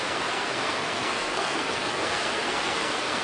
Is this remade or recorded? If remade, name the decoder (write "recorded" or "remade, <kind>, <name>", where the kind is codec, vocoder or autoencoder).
remade, codec, SNAC